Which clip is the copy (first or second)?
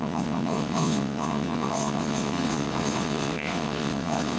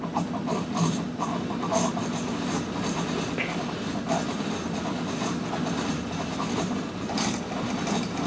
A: first